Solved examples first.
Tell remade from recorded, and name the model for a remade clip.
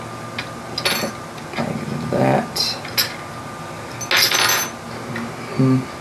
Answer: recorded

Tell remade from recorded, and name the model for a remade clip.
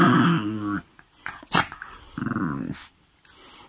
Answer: recorded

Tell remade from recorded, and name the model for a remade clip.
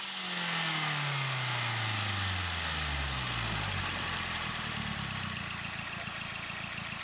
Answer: recorded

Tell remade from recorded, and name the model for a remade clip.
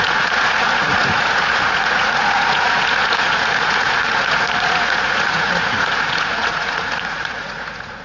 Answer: remade, vocoder, Vocos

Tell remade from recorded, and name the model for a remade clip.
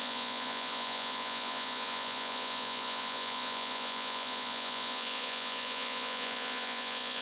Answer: remade, vocoder, Vocos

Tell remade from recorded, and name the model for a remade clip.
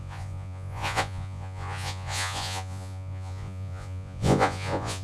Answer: remade, vocoder, Vocos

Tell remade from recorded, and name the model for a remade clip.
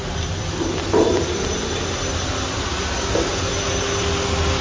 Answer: recorded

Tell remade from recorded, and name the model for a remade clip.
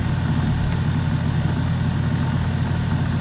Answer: recorded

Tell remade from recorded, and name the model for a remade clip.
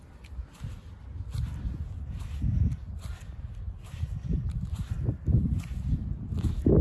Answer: recorded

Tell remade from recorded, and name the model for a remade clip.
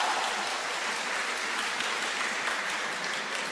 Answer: recorded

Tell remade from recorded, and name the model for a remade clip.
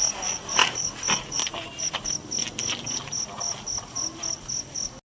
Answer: recorded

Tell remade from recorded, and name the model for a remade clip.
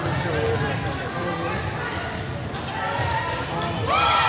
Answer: recorded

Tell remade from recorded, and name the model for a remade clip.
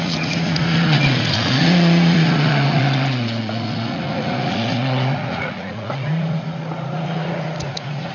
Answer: remade, vocoder, Vocos